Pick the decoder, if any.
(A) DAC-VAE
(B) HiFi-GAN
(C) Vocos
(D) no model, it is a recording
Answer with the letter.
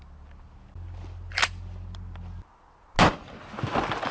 D